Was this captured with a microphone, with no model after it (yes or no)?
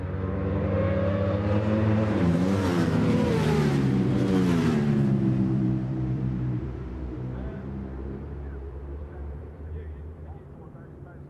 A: no